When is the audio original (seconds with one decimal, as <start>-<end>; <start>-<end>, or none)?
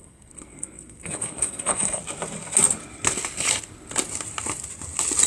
2.0-5.3